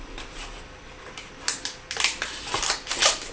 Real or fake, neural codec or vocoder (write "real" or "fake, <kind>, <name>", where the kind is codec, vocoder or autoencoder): real